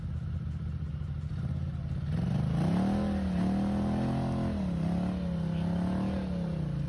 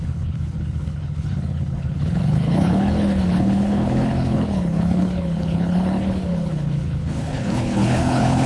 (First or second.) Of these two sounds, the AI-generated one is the second